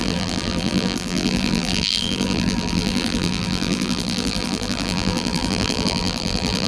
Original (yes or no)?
no